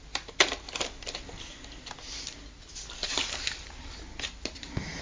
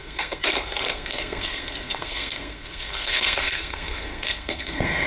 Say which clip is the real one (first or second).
first